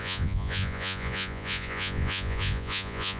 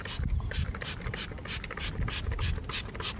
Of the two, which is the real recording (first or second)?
second